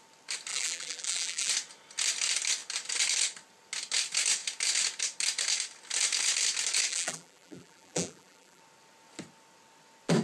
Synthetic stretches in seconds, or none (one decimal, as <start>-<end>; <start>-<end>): 0.5-1.5; 6.9-8.6